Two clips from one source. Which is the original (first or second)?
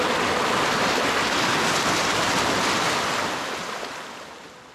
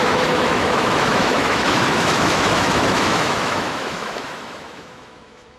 first